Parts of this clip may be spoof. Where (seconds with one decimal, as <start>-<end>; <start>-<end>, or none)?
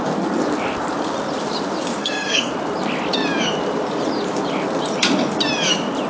2.0-2.5